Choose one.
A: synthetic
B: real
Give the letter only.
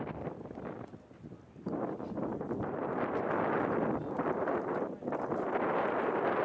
B